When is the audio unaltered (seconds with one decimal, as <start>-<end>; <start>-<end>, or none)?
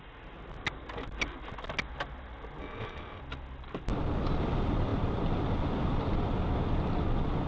0.0-2.6; 3.2-7.5